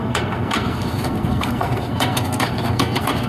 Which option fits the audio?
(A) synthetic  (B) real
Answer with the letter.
A